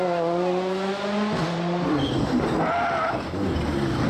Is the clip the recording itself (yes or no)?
yes